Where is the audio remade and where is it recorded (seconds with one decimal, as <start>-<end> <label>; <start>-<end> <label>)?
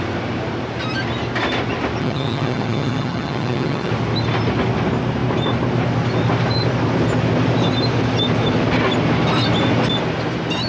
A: 0.0-2.0 recorded; 2.0-3.9 remade; 3.9-10.7 recorded